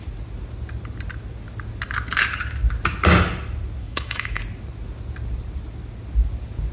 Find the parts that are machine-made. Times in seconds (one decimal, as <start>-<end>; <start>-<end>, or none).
3.8-4.4